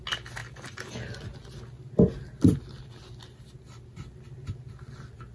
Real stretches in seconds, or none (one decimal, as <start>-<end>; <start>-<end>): 0.0-5.3